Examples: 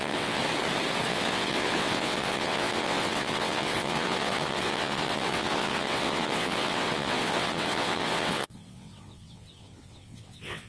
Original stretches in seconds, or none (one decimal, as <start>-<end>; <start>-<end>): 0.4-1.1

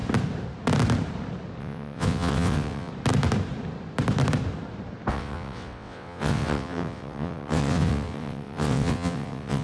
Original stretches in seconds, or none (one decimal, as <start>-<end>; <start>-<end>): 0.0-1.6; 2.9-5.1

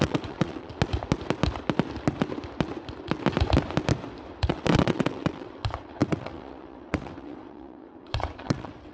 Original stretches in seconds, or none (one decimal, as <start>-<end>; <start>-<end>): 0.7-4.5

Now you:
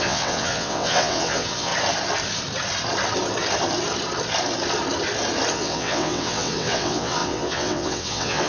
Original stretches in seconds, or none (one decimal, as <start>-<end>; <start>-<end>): 1.7-5.5

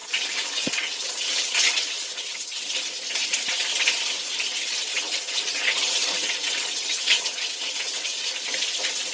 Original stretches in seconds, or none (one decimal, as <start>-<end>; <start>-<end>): 2.6-4.9; 8.3-9.1

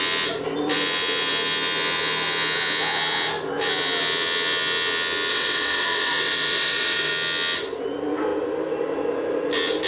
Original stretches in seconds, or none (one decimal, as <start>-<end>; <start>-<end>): 0.0-5.3; 7.1-9.9

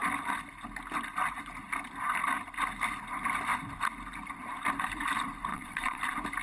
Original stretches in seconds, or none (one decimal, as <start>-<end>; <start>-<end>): 0.0-5.5; 6.0-6.4